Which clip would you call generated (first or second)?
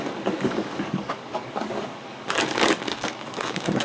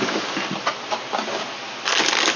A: first